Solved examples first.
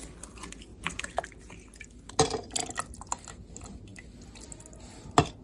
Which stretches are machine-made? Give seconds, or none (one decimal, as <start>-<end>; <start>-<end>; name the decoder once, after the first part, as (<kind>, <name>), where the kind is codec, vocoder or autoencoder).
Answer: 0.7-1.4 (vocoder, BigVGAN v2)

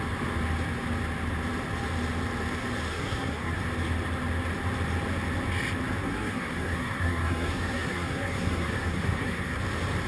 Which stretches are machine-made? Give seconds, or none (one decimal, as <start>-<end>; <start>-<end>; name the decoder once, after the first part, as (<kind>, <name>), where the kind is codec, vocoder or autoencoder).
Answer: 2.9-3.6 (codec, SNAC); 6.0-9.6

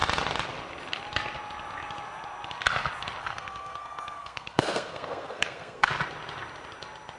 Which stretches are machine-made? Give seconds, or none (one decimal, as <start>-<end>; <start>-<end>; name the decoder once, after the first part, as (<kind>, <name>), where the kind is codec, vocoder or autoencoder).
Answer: 3.2-5.9 (codec, SNAC)